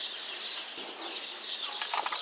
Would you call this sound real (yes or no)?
yes